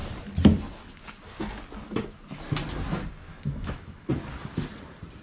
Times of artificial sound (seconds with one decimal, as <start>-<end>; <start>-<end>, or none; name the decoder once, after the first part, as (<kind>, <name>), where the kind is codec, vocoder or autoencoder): 3.3-4.1 (autoencoder, DAC-VAE)